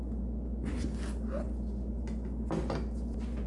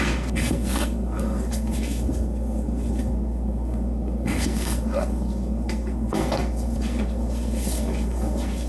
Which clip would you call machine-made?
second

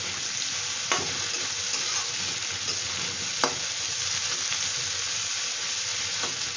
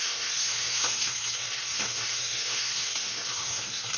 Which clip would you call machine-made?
second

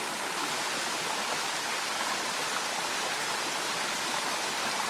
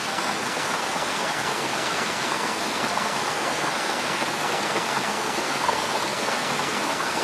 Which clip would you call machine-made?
second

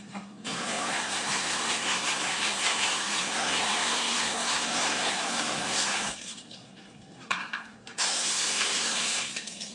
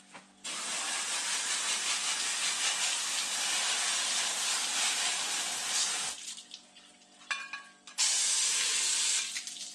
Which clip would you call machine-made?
first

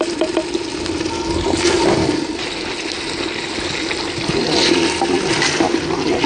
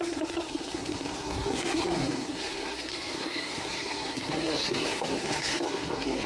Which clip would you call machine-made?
second